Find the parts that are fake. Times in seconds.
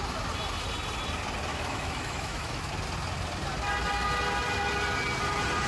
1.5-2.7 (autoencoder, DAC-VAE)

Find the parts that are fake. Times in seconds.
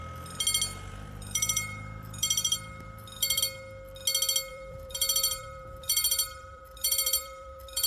0.7-3.4 (vocoder, BigVGAN v2); 4.5-7.9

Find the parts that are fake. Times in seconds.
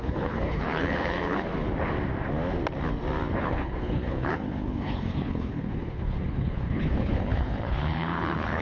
0.0-1.5 (codec, HILCodec); 3.4-8.6